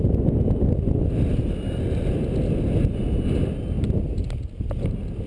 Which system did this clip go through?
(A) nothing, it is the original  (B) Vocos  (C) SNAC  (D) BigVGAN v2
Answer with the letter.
A